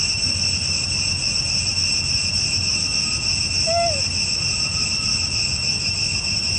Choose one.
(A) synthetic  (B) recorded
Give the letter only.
B